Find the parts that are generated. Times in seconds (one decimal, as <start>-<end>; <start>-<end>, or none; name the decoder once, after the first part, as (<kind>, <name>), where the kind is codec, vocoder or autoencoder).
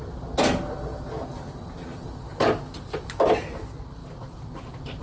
none